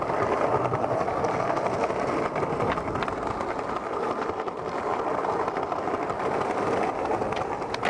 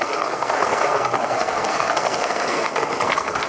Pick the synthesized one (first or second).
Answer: second